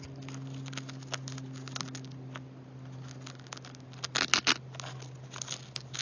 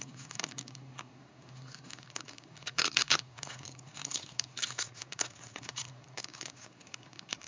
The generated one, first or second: second